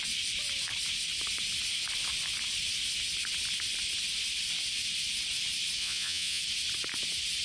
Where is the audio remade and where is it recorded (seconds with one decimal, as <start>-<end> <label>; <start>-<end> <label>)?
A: 0.0-5.8 recorded; 5.8-6.4 remade; 6.4-7.4 recorded